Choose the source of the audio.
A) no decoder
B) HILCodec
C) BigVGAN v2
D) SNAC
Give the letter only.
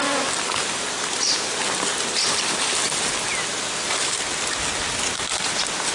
A